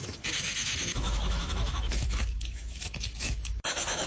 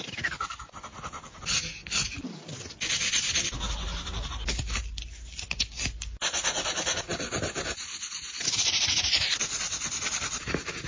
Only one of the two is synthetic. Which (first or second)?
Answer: first